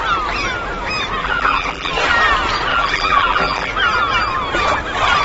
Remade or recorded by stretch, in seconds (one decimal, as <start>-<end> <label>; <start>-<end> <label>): 0.0-1.2 recorded; 1.2-1.9 remade; 1.9-2.7 recorded; 2.7-3.7 remade; 3.7-5.2 recorded